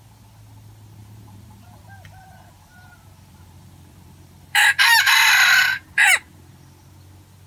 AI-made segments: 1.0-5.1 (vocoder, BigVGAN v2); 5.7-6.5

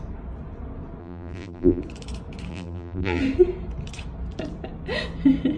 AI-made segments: 1.0-1.8 (vocoder, BigVGAN v2); 2.5-3.2

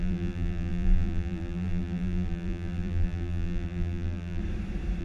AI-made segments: 0.0-4.4 (vocoder, BigVGAN v2)

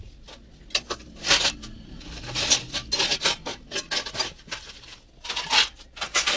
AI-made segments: none

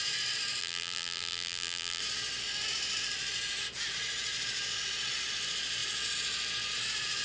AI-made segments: 0.6-2.0 (vocoder, BigVGAN v2)

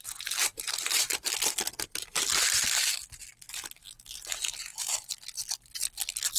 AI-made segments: 4.7-5.4 (vocoder, BigVGAN v2)

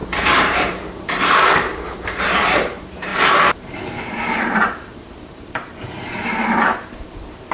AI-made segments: 0.0-7.5 (vocoder, BigVGAN v2)

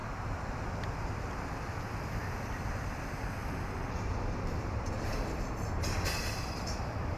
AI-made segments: 3.4-7.2 (vocoder, BigVGAN v2)